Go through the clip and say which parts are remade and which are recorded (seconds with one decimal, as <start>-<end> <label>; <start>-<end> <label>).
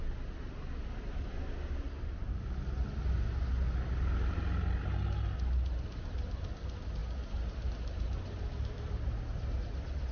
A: 0.0-7.0 recorded; 7.0-8.9 remade; 8.9-10.1 recorded